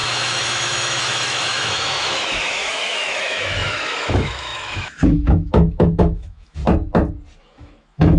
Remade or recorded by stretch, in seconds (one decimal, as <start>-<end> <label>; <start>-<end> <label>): 0.0-6.6 remade; 6.6-7.4 recorded; 7.4-8.2 remade